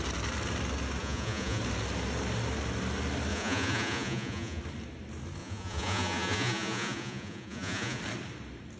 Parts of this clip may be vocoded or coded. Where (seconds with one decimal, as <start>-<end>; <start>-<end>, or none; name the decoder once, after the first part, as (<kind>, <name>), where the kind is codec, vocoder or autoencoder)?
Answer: 1.0-1.6 (vocoder, Vocos); 3.3-4.6; 5.4-8.0